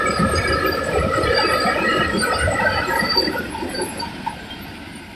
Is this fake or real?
real